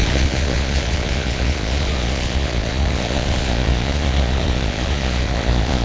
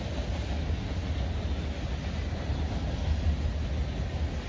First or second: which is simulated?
first